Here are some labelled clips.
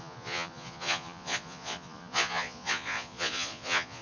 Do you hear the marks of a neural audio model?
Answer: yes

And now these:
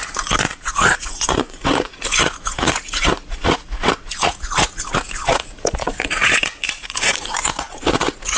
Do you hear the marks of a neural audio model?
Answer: yes